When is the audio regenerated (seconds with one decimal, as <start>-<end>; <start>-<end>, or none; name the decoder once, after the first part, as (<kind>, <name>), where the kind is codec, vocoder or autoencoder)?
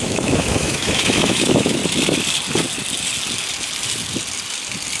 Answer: 0.0-1.8 (autoencoder, DAC-VAE)